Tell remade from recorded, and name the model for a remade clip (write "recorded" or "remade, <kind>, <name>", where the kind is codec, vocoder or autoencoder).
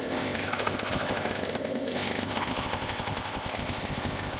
remade, codec, ZipCodec